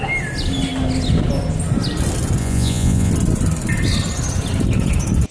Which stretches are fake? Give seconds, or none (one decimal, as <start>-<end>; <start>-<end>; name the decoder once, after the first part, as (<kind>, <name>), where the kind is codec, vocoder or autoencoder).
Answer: 2.4-3.1 (vocoder, Vocos)